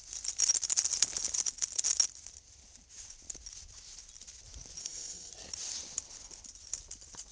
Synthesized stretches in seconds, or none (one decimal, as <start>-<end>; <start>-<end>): 4.8-5.3